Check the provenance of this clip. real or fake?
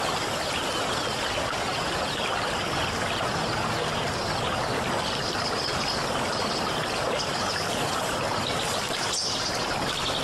real